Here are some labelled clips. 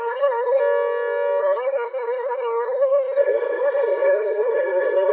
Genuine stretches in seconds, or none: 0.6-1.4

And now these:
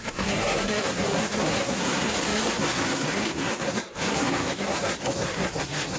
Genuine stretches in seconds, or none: none

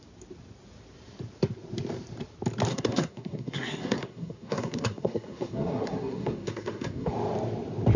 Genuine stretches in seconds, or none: 0.0-2.7; 7.1-8.0

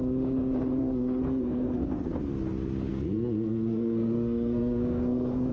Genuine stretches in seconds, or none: 0.0-0.8; 2.2-2.9

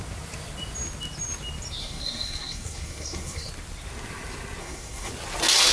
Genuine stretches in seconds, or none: 0.0-1.8; 3.5-4.6; 5.1-5.7

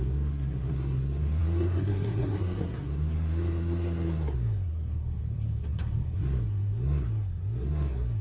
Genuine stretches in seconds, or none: none

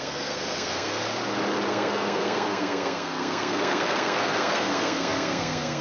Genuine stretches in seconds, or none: 1.0-1.7